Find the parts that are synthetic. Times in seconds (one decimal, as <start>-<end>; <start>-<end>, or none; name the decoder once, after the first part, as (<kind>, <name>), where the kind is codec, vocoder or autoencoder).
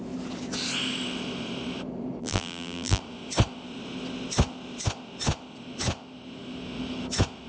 2.2-3.0 (vocoder, BigVGAN v2)